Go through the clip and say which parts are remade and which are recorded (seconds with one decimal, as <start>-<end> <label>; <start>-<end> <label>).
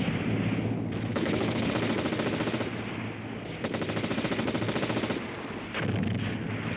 0.0-1.1 recorded; 1.1-1.7 remade; 1.7-6.8 recorded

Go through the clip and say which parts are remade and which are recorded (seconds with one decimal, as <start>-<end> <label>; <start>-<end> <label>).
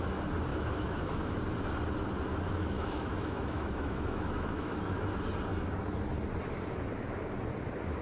0.0-0.5 recorded; 0.5-1.3 remade; 1.3-2.3 recorded; 2.3-5.0 remade; 5.0-8.0 recorded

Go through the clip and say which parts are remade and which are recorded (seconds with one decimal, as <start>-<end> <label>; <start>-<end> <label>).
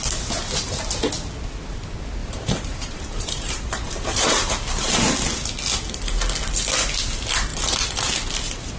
0.0-2.2 recorded; 2.2-5.0 remade; 5.0-7.5 recorded; 7.5-8.1 remade; 8.1-8.8 recorded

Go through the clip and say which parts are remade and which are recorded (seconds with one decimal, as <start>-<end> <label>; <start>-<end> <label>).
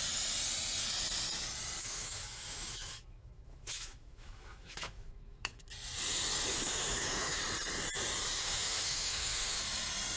0.0-1.8 recorded; 1.8-5.7 remade; 5.7-6.5 recorded; 6.5-7.4 remade; 7.4-8.4 recorded; 8.4-9.6 remade; 9.6-10.2 recorded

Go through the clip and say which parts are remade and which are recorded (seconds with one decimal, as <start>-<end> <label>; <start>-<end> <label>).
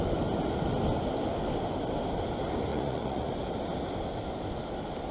0.0-2.7 recorded; 2.7-3.3 remade; 3.3-5.1 recorded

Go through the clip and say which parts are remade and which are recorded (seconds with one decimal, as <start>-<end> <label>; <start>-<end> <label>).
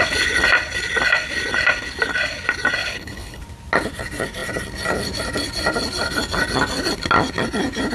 0.0-2.8 recorded; 2.8-3.4 remade; 3.4-7.9 recorded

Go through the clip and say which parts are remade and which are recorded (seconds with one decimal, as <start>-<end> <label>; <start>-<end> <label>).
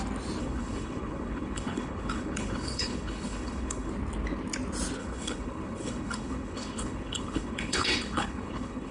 0.0-0.4 recorded; 0.4-3.9 remade; 3.9-5.0 recorded; 5.0-8.9 remade